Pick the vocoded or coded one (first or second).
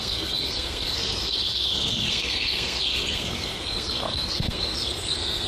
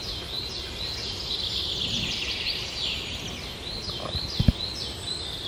first